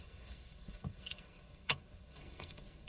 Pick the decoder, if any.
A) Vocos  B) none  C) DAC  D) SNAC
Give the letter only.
D